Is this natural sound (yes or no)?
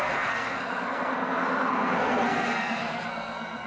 no